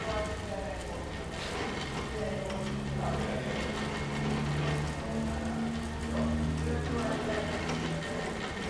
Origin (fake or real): real